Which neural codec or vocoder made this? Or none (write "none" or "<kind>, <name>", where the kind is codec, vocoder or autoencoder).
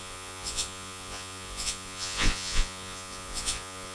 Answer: vocoder, Vocos